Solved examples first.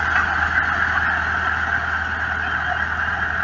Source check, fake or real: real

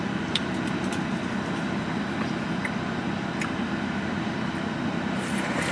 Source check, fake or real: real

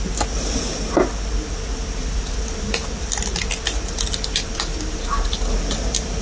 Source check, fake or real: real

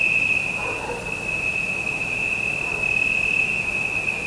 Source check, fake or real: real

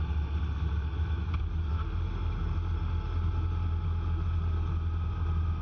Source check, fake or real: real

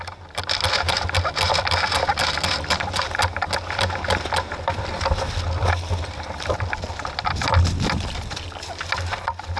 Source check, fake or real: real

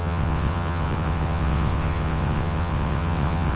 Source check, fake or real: fake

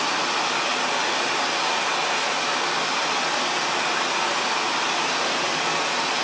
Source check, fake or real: real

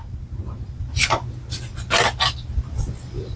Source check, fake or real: real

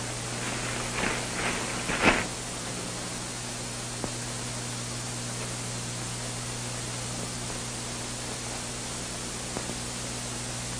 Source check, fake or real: real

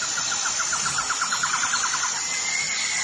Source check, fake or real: real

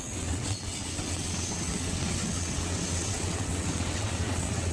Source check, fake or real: fake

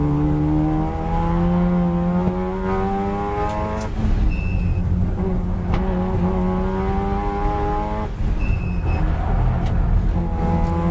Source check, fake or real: real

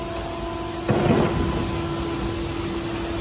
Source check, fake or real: real